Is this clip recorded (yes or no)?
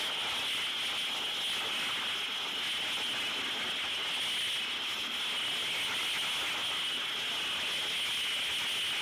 yes